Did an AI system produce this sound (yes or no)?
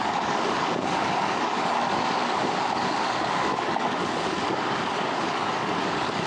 yes